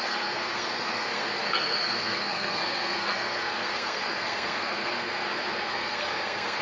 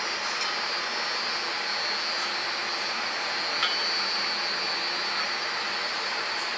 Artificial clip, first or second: first